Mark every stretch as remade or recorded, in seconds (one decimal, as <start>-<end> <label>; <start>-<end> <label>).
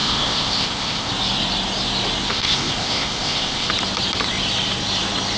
0.0-1.1 remade; 1.1-2.3 recorded; 2.3-3.7 remade; 3.7-5.4 recorded